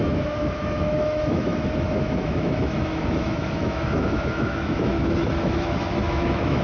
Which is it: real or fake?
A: fake